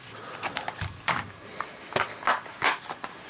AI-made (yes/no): no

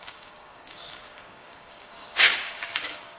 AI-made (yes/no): yes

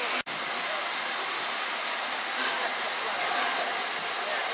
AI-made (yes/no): no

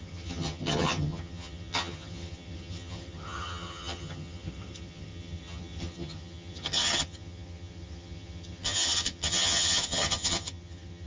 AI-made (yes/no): yes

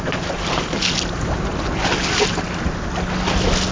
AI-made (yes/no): no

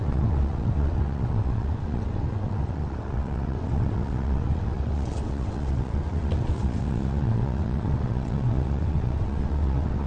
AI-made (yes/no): yes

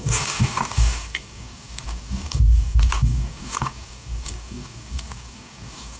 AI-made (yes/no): yes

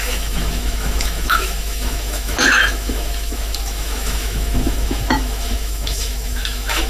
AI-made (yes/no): yes